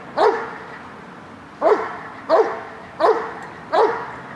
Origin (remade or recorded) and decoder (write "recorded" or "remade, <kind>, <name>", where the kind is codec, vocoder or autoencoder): remade, vocoder, BigVGAN v2